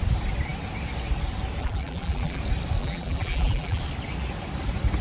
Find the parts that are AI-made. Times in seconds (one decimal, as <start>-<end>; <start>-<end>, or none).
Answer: 1.6-2.4; 2.8-3.8